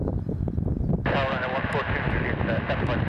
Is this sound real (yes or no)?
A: yes